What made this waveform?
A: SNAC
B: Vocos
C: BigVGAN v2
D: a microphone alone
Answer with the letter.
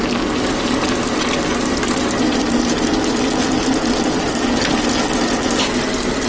D